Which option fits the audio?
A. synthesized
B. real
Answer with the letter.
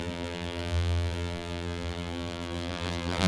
A